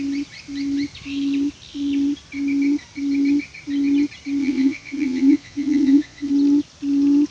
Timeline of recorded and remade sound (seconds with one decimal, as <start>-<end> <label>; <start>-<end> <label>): 0.0-4.4 recorded; 4.4-6.3 remade; 6.3-7.3 recorded